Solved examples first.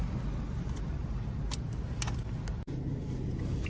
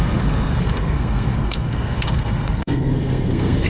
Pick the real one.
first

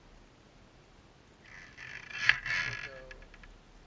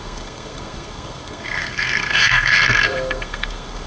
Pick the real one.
first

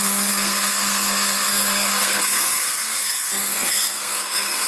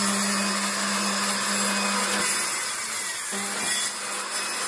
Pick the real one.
second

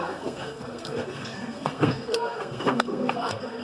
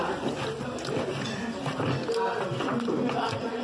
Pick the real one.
second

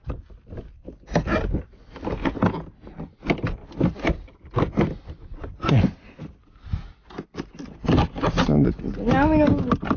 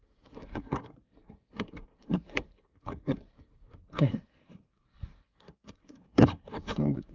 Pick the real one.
first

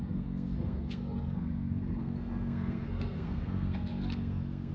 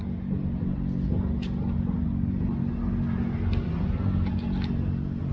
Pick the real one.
second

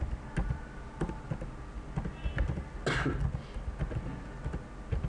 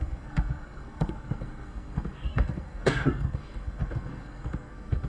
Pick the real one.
first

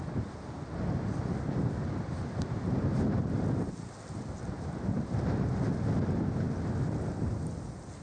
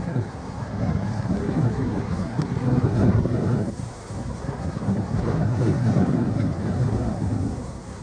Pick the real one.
first